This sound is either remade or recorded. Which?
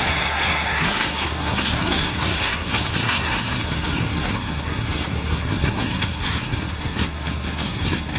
remade